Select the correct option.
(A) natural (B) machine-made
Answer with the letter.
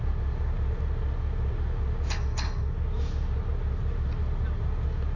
A